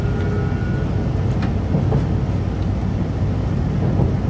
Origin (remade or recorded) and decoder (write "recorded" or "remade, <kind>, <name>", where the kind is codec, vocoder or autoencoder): recorded